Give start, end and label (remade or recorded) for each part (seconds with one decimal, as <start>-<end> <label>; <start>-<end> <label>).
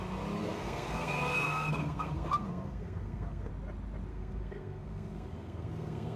0.0-0.4 recorded; 0.4-3.5 remade; 3.5-4.1 recorded; 4.1-6.2 remade